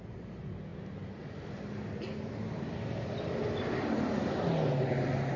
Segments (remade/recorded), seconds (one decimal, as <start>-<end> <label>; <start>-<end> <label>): 0.0-5.4 recorded